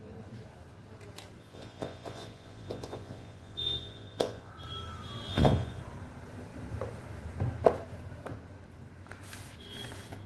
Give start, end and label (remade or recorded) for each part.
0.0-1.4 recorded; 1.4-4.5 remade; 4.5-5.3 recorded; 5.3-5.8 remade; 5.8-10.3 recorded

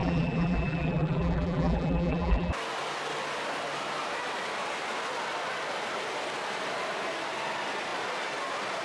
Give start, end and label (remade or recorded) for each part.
0.0-2.5 remade; 2.5-8.8 recorded

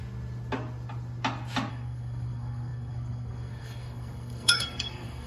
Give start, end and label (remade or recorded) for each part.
0.0-1.7 recorded; 1.7-5.3 remade

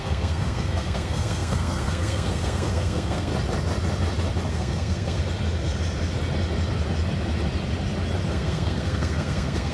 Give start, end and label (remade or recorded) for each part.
0.0-3.3 remade; 3.3-4.5 recorded; 4.5-5.2 remade; 5.2-8.3 recorded; 8.3-9.7 remade

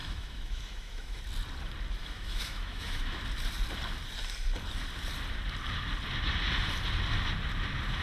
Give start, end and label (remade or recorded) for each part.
0.0-1.2 remade; 1.2-2.0 recorded; 2.0-3.2 remade; 3.2-8.0 recorded

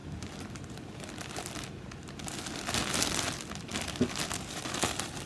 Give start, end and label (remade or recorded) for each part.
0.0-5.3 recorded